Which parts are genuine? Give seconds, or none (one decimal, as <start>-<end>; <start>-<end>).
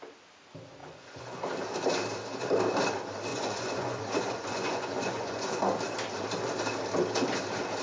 0.0-0.8; 1.4-3.3; 5.6-7.8